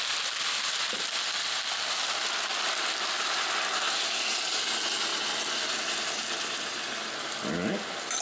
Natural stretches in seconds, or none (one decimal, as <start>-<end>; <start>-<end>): 0.0-8.2